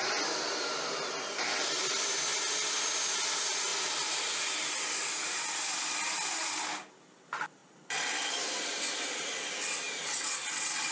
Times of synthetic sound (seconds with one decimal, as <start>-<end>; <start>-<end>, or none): none